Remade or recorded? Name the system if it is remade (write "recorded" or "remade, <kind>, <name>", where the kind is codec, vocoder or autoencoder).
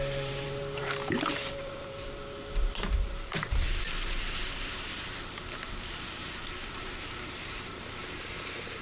remade, vocoder, BigVGAN v2